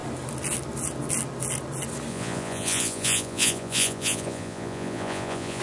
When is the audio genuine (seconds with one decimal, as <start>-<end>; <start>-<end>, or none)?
0.0-2.1